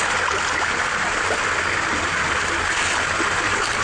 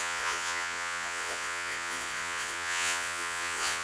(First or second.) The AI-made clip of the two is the second